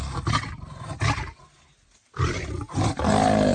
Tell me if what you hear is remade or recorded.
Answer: recorded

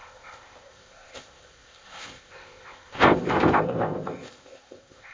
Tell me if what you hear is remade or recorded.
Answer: remade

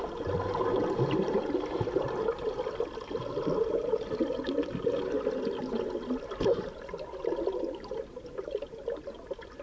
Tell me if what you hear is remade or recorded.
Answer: recorded